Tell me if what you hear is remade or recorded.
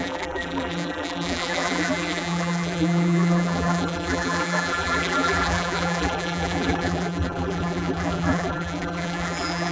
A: remade